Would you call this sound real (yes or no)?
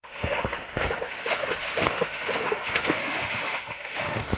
no